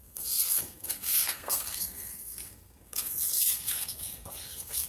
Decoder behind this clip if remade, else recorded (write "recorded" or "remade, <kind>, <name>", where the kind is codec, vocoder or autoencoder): remade, codec, SNAC